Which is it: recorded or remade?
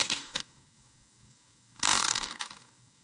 remade